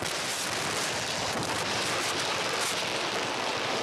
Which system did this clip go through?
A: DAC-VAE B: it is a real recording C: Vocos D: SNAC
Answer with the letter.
B